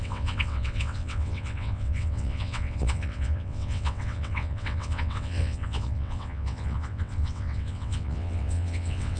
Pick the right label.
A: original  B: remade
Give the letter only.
B